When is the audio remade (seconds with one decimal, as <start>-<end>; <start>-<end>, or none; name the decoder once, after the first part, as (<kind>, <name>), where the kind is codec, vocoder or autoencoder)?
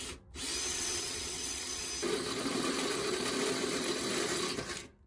0.7-1.9 (vocoder, WaveNeXt)